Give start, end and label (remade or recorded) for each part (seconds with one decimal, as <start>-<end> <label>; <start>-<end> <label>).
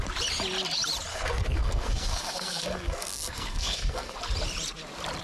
0.0-1.1 recorded; 1.1-4.2 remade; 4.2-5.2 recorded